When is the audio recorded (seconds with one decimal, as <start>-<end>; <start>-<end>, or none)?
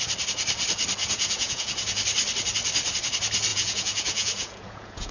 0.0-1.0; 2.0-3.5